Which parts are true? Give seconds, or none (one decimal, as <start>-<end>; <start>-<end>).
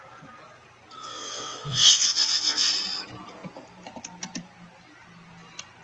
0.0-1.0; 2.7-5.8